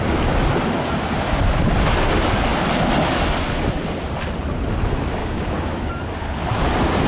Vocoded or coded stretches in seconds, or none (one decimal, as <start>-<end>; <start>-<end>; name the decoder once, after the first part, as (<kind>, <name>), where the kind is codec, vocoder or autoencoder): 5.2-5.9 (codec, DAC)